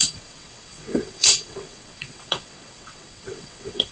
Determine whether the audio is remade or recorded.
remade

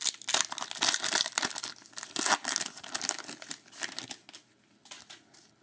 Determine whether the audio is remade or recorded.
recorded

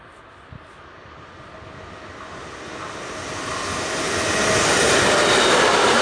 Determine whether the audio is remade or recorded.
recorded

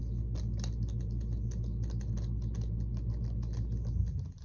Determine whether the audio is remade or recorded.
recorded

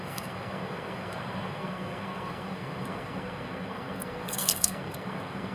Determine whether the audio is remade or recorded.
remade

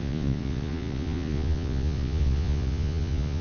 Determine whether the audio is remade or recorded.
remade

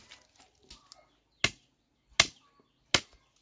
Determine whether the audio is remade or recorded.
recorded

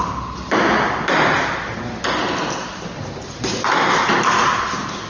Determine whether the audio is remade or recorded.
recorded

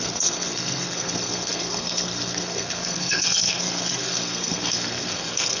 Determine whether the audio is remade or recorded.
remade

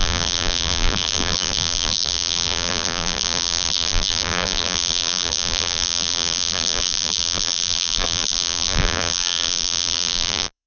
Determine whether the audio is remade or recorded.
remade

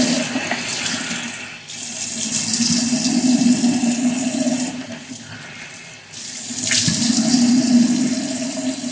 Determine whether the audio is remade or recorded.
recorded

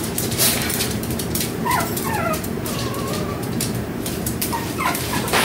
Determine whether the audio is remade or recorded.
remade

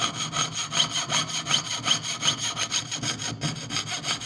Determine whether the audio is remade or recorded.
recorded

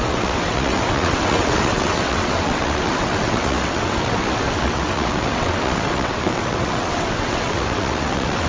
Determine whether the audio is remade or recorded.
remade